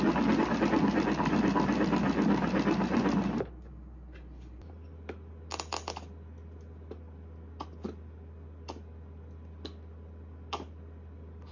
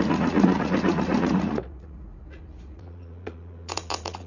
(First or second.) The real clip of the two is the first